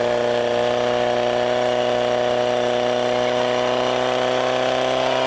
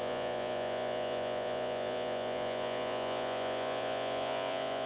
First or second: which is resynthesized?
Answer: second